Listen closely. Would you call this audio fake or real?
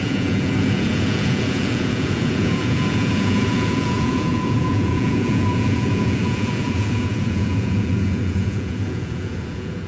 fake